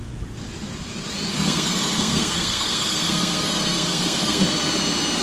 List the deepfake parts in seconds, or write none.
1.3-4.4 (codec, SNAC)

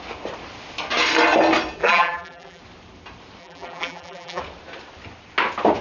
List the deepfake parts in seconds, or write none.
1.8-2.6 (vocoder, BigVGAN v2); 3.4-4.4

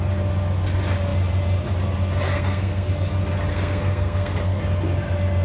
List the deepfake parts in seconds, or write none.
2.3-2.9 (codec, SNAC); 3.5-4.6

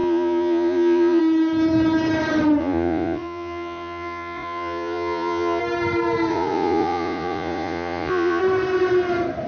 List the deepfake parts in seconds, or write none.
0.0-1.2 (vocoder, Vocos); 2.6-5.6; 6.3-8.4

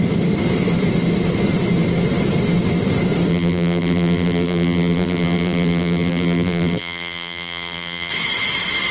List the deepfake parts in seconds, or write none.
3.3-8.1 (vocoder, BigVGAN v2)

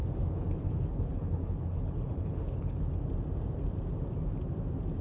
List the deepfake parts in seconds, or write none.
0.0-3.0 (codec, HILCodec)

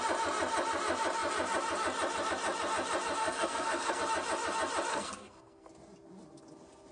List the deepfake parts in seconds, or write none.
3.2-4.0 (codec, SNAC); 4.9-5.7